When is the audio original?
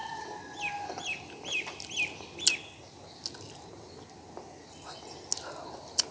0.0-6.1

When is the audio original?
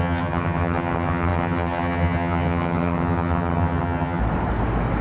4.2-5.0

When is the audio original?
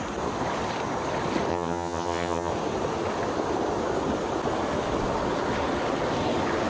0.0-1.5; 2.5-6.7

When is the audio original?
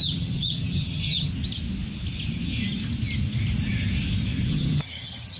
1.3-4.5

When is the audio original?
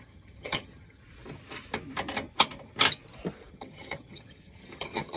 1.0-3.5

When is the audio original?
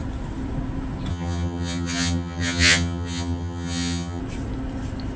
0.0-1.1; 4.2-5.2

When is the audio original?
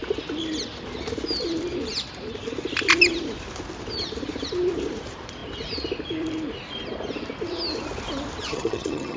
0.0-8.5